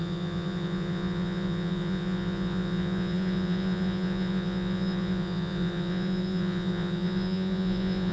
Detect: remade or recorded remade